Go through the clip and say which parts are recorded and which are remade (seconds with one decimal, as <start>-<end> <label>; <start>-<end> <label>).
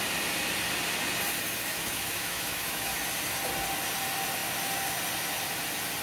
0.0-1.7 recorded; 1.7-3.0 remade; 3.0-6.0 recorded